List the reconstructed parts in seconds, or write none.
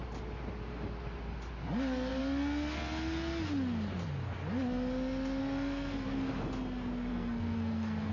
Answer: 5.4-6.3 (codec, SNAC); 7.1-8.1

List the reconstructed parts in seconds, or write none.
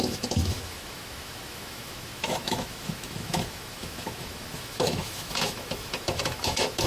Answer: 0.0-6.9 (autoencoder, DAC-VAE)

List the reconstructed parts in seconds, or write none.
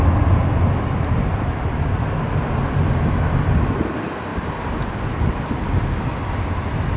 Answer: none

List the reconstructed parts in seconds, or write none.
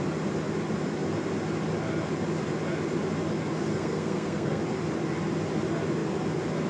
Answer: 3.7-4.6 (codec, SNAC)